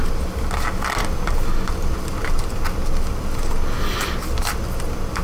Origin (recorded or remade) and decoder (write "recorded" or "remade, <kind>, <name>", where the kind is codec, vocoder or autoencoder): recorded